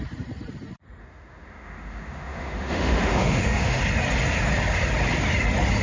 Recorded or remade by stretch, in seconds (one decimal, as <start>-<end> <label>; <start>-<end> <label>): 0.0-1.0 recorded; 1.0-3.8 remade; 3.8-5.8 recorded

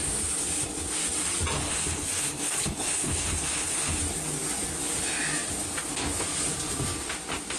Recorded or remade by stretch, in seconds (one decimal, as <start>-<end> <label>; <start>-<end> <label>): 0.0-1.6 recorded; 1.6-4.0 remade; 4.0-7.6 recorded

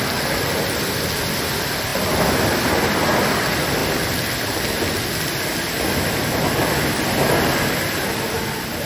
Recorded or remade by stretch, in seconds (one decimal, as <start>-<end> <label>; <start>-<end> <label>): 0.0-8.9 recorded

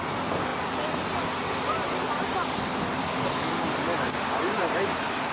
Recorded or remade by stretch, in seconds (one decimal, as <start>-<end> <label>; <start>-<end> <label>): 0.0-4.4 recorded; 4.4-5.3 remade

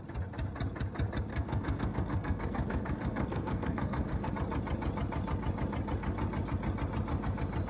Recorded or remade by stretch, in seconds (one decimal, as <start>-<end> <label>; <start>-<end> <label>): 0.0-1.3 recorded; 1.3-4.3 remade; 4.3-7.7 recorded

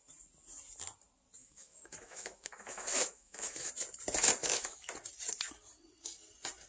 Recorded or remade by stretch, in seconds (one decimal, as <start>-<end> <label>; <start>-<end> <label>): 0.0-1.4 recorded; 1.4-3.7 remade; 3.7-4.4 recorded; 4.4-4.9 remade; 4.9-6.7 recorded

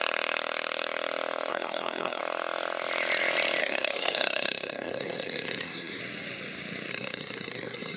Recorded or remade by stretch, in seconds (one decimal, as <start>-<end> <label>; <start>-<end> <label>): 0.0-1.5 recorded; 1.5-2.2 remade; 2.2-3.6 recorded; 3.6-6.0 remade; 6.0-6.9 recorded; 6.9-8.0 remade

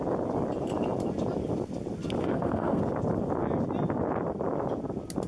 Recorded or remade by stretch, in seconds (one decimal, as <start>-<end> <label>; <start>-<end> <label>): 0.0-2.2 recorded; 2.2-2.8 remade; 2.8-5.3 recorded